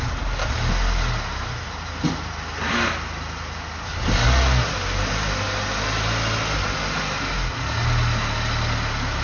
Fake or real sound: real